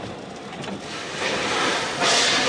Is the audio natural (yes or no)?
yes